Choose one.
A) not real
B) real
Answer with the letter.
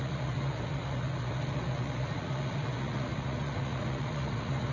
A